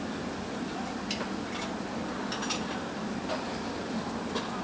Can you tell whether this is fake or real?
real